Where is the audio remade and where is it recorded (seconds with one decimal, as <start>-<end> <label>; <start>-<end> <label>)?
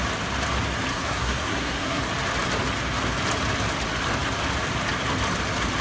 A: 0.0-0.9 recorded; 0.9-2.0 remade; 2.0-5.8 recorded